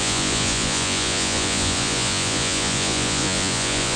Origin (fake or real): fake